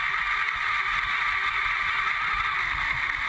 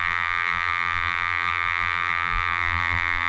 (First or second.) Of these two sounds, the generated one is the second